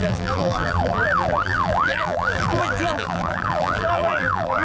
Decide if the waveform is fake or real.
fake